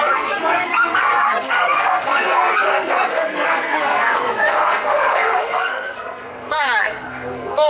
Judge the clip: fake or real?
fake